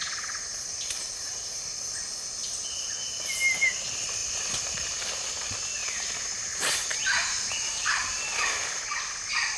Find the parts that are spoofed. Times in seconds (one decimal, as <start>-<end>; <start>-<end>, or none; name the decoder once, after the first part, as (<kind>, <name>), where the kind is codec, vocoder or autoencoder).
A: 0.5-1.5 (vocoder, BigVGAN v2); 4.2-5.0; 5.8-8.2